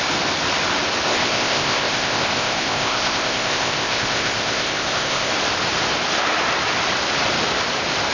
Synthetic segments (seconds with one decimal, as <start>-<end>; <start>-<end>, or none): 1.1-5.3